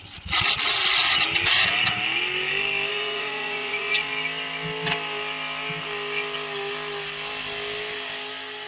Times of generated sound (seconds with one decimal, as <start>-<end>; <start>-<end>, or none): 2.9-4.1